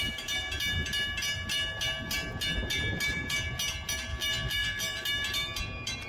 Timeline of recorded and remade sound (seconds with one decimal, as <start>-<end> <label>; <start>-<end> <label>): 0.0-4.1 recorded; 4.1-5.0 remade; 5.0-6.1 recorded